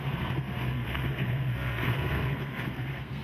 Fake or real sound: fake